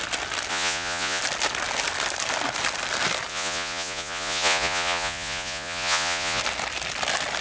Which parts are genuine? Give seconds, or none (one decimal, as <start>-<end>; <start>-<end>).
0.0-0.5; 1.2-3.3; 6.4-7.4